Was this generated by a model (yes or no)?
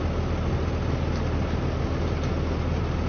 no